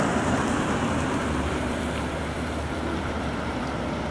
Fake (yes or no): yes